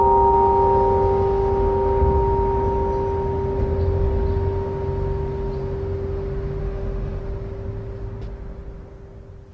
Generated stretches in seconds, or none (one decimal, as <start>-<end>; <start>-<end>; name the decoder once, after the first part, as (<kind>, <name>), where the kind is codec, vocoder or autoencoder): 6.6-7.2 (autoencoder, DAC-VAE)

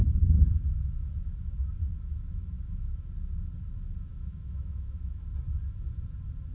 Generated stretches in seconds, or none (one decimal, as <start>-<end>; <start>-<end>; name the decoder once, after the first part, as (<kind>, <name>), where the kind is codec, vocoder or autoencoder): 4.1-5.2 (autoencoder, DAC-VAE)

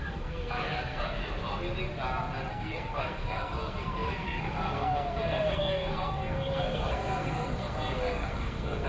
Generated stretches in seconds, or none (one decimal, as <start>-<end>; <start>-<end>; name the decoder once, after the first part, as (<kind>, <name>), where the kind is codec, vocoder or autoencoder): 0.0-1.2 (codec, SNAC); 2.5-8.9

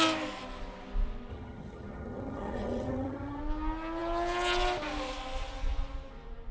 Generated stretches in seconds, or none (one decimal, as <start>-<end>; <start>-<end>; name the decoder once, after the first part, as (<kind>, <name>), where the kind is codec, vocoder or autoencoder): 1.3-3.4 (vocoder, HiFi-GAN)

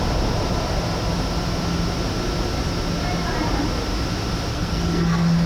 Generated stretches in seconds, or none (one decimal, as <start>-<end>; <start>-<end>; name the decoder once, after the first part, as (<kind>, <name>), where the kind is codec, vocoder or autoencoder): 4.5-5.5 (codec, SNAC)

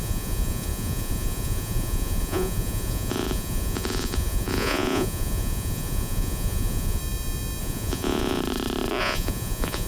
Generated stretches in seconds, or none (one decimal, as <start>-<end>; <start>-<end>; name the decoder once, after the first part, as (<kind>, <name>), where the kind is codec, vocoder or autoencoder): 0.0-7.0 (vocoder, Vocos); 7.6-8.4; 9.0-9.9

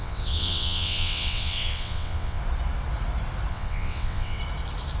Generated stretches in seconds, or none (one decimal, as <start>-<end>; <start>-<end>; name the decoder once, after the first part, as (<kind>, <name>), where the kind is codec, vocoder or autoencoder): 0.0-2.4 (vocoder, WaveNeXt); 3.5-4.4

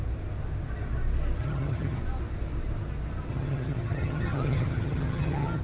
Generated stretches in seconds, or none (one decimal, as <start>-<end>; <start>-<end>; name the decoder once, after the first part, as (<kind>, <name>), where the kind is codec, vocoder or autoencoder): 1.4-2.0 (vocoder, HiFi-GAN); 3.3-5.6